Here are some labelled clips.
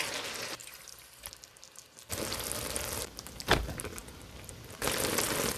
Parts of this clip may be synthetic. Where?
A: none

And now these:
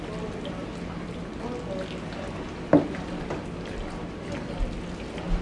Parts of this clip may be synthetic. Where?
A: none

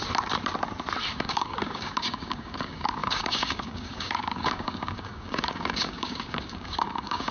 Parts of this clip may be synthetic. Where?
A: 1.1-7.3 (codec, DAC)